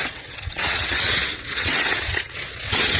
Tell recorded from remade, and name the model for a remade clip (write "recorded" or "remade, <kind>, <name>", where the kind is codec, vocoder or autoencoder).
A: remade, vocoder, WaveNeXt